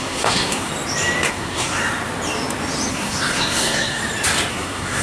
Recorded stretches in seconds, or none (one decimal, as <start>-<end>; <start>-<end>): 0.7-1.3; 1.8-2.9; 4.0-4.5